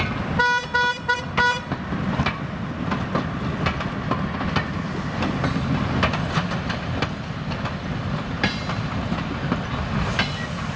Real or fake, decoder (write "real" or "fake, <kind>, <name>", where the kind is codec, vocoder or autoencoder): real